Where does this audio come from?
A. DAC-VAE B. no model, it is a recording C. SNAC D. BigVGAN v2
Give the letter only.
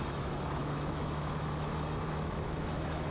A